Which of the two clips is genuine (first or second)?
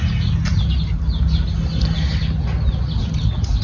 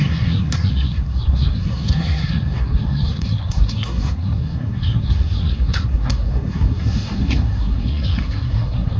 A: first